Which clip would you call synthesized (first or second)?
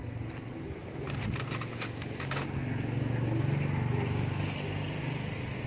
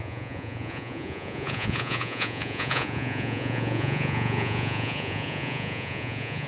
second